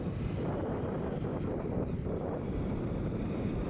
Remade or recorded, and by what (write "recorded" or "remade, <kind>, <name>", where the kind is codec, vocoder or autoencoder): remade, vocoder, BigVGAN v2